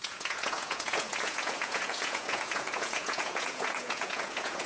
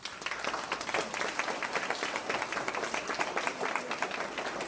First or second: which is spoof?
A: first